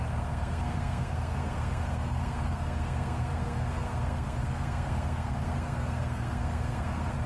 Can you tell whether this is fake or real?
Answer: fake